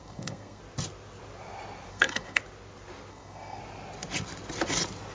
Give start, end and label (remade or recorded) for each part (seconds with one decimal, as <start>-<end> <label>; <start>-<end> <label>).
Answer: 0.0-0.6 remade; 0.6-1.9 recorded; 1.9-2.4 remade; 2.4-3.1 recorded; 3.1-3.6 remade; 3.6-5.1 recorded